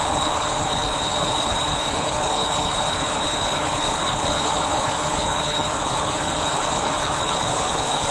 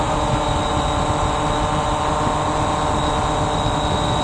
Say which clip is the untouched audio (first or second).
second